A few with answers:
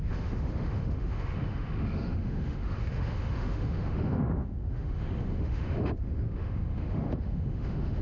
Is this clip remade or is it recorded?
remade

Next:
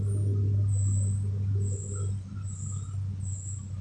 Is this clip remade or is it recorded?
recorded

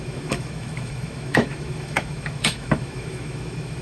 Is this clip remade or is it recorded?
remade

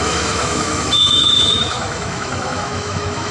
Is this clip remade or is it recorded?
remade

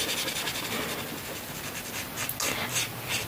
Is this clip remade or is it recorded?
recorded